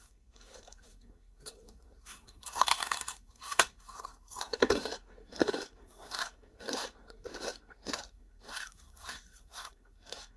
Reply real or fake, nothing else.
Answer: fake